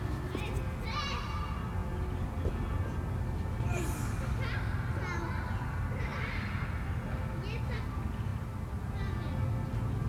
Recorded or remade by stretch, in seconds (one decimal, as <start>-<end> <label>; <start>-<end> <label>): 0.0-10.1 recorded